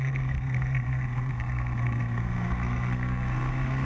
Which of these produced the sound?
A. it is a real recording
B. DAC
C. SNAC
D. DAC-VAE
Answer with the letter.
C